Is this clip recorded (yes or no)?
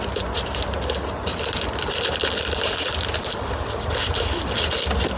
yes